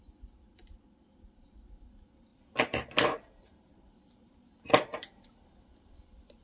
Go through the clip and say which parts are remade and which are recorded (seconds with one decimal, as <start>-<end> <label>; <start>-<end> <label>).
0.0-2.3 recorded; 2.3-5.2 remade; 5.2-6.4 recorded